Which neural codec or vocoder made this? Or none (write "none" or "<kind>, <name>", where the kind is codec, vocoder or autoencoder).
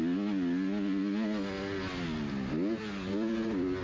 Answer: none